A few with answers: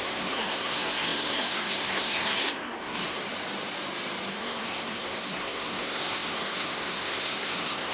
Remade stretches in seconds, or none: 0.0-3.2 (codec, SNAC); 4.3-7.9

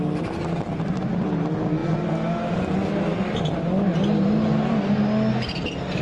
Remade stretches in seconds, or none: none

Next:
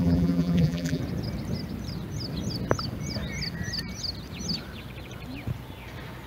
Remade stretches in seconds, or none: 0.0-1.0 (vocoder, BigVGAN v2)

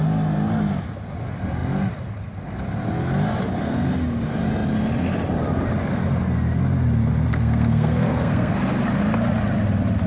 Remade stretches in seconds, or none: 7.3-8.5 (codec, SNAC)

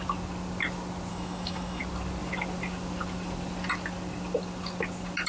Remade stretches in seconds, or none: 1.1-1.8 (autoencoder, DAC-VAE)

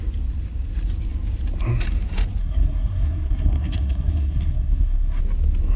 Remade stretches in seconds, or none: 2.4-5.2 (codec, SNAC)

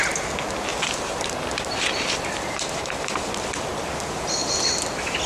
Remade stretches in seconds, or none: 0.7-3.9 (vocoder, BigVGAN v2)